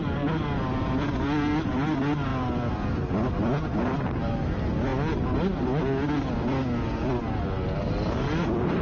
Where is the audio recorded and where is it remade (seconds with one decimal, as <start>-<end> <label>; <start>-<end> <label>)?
0.0-8.8 recorded